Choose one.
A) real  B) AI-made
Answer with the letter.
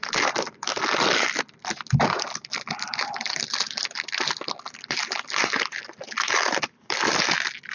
A